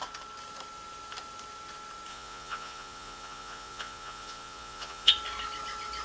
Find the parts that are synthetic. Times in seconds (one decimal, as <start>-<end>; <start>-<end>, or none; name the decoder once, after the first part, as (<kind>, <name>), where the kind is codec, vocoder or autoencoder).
2.1-5.1 (vocoder, Vocos)